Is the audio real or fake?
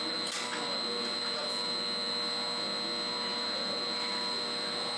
real